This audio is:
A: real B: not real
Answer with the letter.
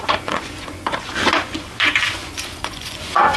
B